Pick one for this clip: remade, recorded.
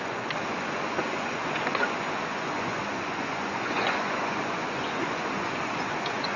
remade